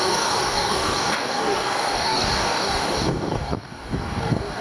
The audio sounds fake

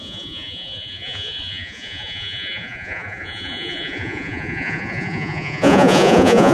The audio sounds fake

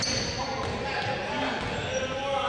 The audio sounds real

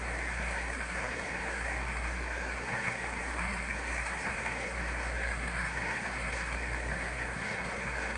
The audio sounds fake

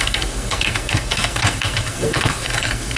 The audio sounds fake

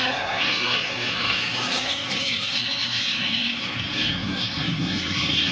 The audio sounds fake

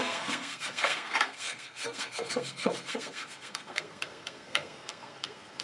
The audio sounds fake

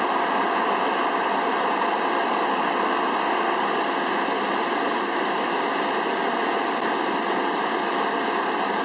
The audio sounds real